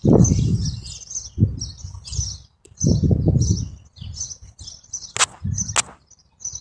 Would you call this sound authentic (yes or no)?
yes